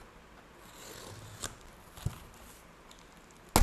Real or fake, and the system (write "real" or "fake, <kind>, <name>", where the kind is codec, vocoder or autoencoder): real